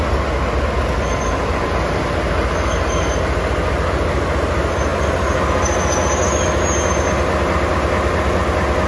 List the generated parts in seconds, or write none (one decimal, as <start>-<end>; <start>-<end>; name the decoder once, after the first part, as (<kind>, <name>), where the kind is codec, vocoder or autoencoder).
1.4-2.1 (vocoder, BigVGAN v2)